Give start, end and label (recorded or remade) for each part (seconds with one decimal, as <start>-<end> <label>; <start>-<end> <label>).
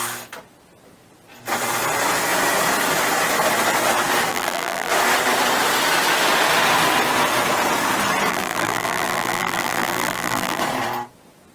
0.0-4.3 recorded; 4.3-4.9 remade; 4.9-8.3 recorded; 8.3-10.6 remade; 10.6-11.5 recorded